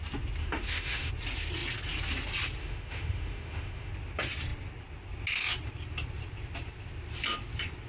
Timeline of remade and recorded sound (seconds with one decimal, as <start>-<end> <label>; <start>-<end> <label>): 0.0-0.4 recorded; 0.4-1.1 remade; 1.1-2.6 recorded; 2.6-3.9 remade; 3.9-7.9 recorded